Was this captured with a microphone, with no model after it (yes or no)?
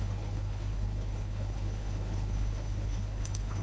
no